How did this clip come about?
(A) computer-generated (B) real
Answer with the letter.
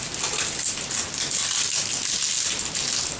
B